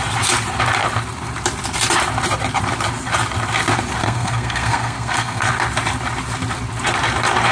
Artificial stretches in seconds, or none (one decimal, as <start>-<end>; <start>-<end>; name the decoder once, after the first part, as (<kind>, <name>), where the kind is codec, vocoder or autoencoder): 4.0-5.5 (codec, SNAC)